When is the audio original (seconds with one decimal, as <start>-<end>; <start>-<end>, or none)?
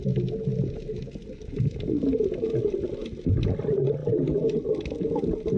0.0-0.5; 1.6-5.6